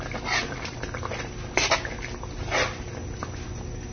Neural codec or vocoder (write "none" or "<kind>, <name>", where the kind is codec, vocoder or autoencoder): none